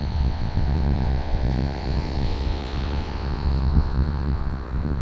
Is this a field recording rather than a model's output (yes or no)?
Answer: no